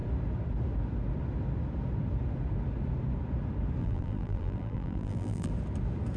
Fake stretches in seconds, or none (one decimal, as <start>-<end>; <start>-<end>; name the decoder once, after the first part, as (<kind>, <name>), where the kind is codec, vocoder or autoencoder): 3.8-5.5 (vocoder, BigVGAN v2)